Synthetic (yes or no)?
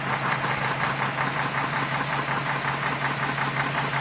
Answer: no